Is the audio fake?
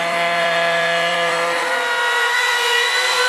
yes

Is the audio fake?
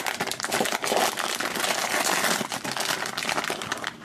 no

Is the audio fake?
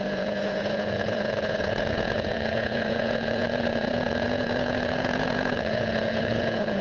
yes